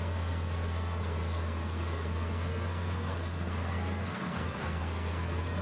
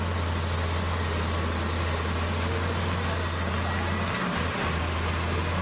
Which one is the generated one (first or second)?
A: first